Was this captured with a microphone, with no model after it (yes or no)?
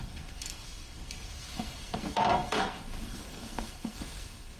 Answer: no